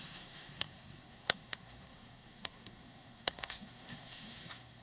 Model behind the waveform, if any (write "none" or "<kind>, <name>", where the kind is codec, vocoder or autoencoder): codec, SNAC